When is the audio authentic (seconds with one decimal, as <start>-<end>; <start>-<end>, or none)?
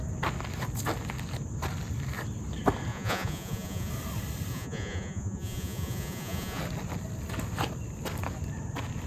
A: 0.0-2.9; 3.9-4.5; 6.6-9.1